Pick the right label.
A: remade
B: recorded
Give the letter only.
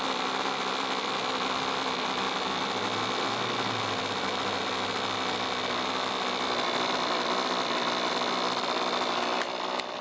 B